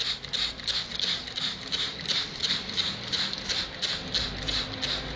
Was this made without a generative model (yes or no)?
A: yes